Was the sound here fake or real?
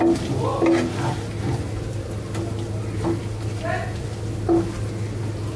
real